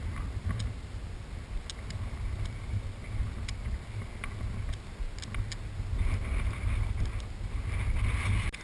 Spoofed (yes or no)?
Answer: no